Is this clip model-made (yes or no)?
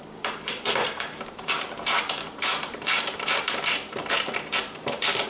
yes